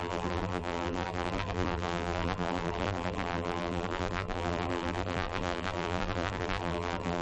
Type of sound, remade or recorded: remade